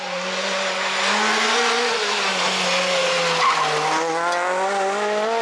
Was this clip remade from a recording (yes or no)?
no